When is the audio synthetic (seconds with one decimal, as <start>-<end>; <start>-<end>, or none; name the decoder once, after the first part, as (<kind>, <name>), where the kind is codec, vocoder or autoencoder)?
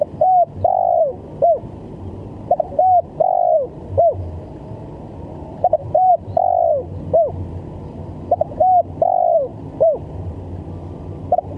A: 5.5-6.1 (vocoder, BigVGAN v2); 9.5-10.3